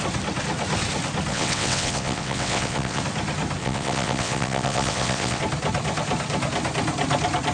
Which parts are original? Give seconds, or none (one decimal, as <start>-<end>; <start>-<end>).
0.0-1.3; 3.0-3.6; 5.4-7.5